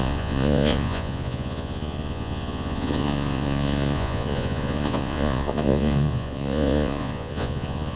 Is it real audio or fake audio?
fake